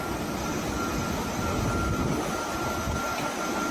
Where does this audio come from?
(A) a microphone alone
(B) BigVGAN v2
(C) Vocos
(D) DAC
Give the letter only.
A